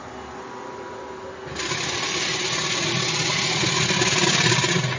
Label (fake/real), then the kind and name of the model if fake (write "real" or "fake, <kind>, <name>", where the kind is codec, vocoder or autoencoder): real